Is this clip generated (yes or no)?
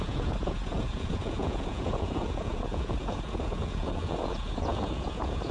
yes